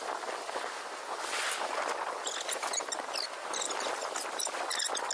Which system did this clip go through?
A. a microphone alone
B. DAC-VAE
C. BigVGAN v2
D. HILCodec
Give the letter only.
A